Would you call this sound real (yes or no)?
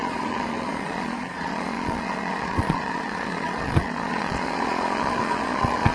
no